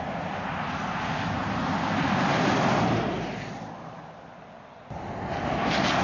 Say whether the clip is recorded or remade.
recorded